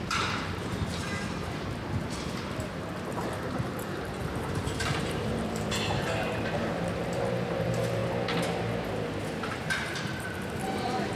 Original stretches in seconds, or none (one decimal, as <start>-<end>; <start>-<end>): 8.0-9.5

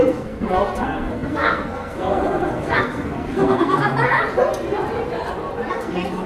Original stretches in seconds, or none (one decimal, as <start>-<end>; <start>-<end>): 3.9-5.7

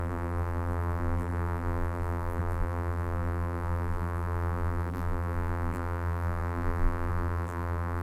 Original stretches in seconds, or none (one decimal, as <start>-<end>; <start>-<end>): none